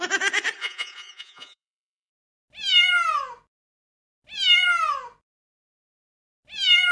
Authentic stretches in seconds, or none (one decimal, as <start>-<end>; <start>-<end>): 0.0-0.6; 2.1-6.9